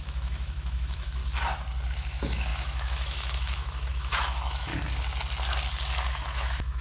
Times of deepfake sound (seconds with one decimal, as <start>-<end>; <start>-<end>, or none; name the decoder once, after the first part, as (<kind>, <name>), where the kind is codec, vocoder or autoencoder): 0.0-1.2 (autoencoder, DAC-VAE); 1.9-4.7; 6.1-6.8